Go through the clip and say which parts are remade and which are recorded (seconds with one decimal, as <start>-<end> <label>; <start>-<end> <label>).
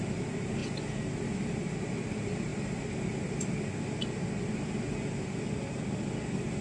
0.0-2.5 remade; 2.5-5.7 recorded; 5.7-6.6 remade